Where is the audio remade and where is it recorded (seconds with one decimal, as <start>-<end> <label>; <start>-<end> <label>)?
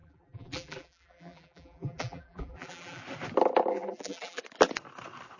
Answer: 0.0-3.0 remade; 3.0-3.7 recorded; 3.7-4.4 remade; 4.4-5.4 recorded